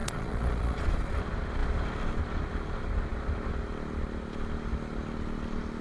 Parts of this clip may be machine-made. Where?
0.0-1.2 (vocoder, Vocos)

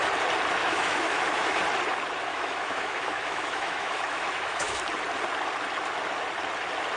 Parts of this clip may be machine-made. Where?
0.6-1.5 (autoencoder, DAC-VAE); 2.3-4.8

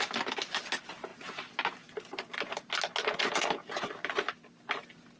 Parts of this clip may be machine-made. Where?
none

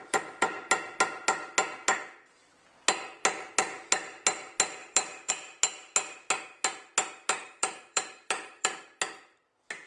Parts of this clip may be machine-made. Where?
4.8-5.3 (vocoder, BigVGAN v2); 7.4-8.8

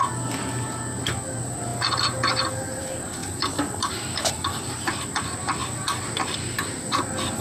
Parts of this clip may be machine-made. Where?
3.2-5.1 (vocoder, BigVGAN v2); 5.6-7.0

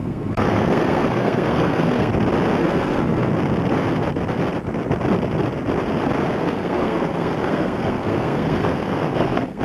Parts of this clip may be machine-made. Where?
0.0-2.1 (codec, SNAC); 2.6-3.3; 6.4-9.6